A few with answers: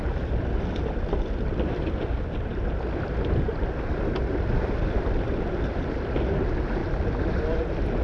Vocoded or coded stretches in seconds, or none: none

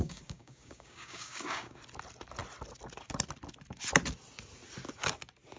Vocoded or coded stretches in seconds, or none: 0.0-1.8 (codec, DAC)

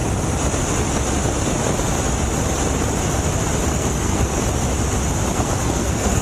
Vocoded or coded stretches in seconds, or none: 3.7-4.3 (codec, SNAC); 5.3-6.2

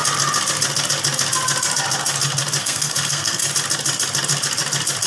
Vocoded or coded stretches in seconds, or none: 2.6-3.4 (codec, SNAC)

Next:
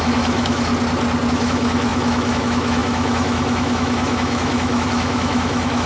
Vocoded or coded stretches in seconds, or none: 0.0-0.7 (autoencoder, DAC-VAE); 1.3-5.9